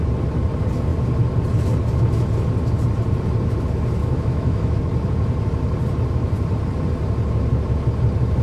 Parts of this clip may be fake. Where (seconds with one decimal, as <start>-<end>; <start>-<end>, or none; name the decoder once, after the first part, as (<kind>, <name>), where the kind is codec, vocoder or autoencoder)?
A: 4.0-4.8 (autoencoder, DAC-VAE)